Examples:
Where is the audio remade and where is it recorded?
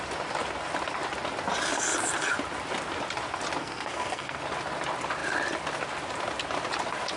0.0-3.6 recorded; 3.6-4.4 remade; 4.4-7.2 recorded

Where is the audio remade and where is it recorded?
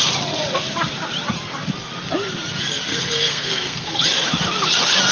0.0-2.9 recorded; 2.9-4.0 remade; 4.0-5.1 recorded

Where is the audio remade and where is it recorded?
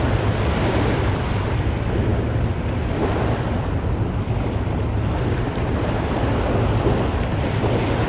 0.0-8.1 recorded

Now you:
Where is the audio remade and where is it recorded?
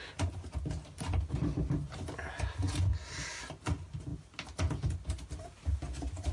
0.0-6.3 recorded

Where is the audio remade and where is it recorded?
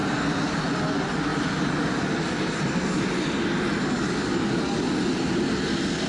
0.0-6.1 recorded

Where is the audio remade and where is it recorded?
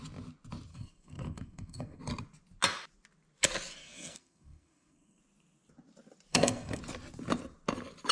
0.0-0.7 recorded; 0.7-2.0 remade; 2.0-3.8 recorded; 3.8-5.2 remade; 5.2-6.3 recorded; 6.3-6.8 remade; 6.8-8.1 recorded